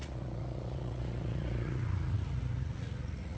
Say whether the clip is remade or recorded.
remade